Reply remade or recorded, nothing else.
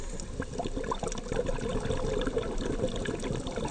recorded